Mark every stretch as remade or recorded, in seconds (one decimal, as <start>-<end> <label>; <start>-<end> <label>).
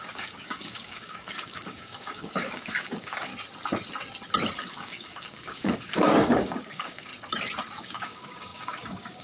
0.0-3.3 remade; 3.3-4.7 recorded; 4.7-7.1 remade; 7.1-7.8 recorded; 7.8-9.2 remade